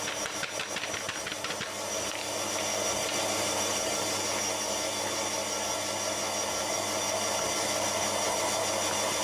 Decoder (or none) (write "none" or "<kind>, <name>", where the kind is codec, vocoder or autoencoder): none